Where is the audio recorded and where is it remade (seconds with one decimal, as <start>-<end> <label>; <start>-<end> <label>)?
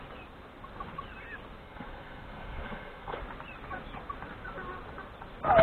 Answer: 0.0-1.6 recorded; 1.6-3.2 remade; 3.2-5.6 recorded